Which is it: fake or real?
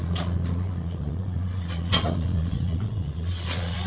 fake